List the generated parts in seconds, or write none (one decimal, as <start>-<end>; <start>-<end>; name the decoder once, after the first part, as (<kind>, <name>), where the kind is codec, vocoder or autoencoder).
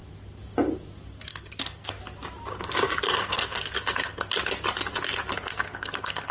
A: 1.3-2.0 (codec, SNAC); 2.5-4.3; 5.5-6.3